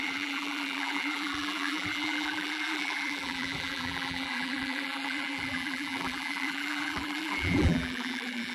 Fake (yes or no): yes